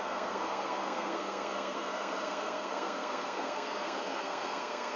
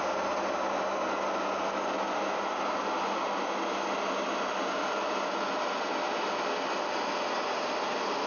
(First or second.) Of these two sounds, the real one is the second